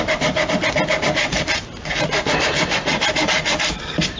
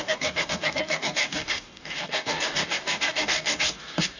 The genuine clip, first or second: first